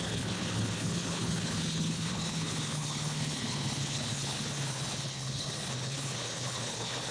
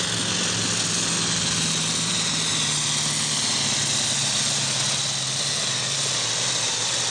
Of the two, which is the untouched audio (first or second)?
second